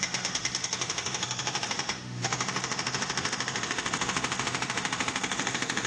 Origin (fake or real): fake